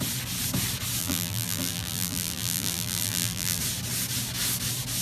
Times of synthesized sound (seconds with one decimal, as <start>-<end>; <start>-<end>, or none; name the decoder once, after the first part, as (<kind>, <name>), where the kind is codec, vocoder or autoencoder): 1.0-3.6 (vocoder, BigVGAN v2)